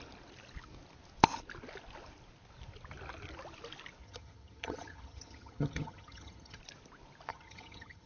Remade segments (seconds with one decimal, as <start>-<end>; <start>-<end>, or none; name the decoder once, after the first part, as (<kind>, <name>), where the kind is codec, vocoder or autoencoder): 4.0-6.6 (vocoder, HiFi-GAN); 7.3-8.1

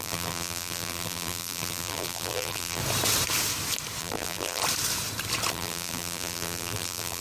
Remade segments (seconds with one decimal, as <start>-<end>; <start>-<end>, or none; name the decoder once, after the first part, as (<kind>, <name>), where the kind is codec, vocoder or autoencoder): 0.0-2.8 (vocoder, BigVGAN v2); 4.0-4.6; 5.5-7.2

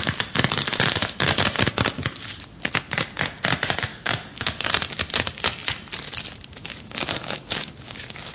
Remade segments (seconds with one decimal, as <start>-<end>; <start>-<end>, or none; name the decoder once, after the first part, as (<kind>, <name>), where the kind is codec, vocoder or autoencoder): 3.9-4.7 (codec, DAC); 6.6-8.3

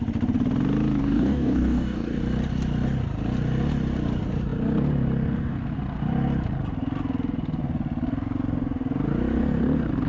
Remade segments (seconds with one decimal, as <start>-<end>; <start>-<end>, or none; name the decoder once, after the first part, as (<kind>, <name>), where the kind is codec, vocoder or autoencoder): 1.0-2.2 (codec, DAC)

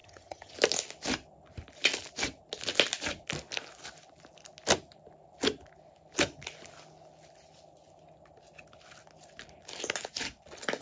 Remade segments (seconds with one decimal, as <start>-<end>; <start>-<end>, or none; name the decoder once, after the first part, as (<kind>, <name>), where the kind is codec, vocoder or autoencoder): 0.0-0.5 (vocoder, HiFi-GAN)

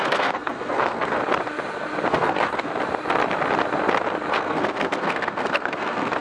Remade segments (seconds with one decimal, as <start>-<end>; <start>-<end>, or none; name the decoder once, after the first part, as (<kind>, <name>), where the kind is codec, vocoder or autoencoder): 0.0-1.2 (codec, SNAC); 2.1-2.7; 4.3-6.2

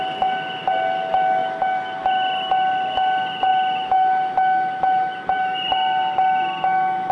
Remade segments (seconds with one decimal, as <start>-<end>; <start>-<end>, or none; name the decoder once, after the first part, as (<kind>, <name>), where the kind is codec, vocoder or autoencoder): none

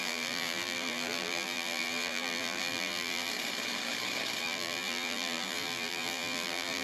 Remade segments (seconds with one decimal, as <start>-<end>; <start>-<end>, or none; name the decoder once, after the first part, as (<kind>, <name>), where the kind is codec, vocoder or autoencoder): 0.0-3.3 (vocoder, BigVGAN v2); 4.4-6.8